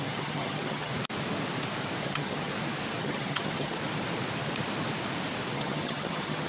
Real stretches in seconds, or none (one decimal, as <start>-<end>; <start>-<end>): 0.9-2.0; 2.5-3.0; 3.8-5.5